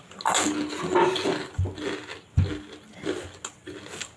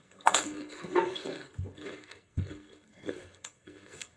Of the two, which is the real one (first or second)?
first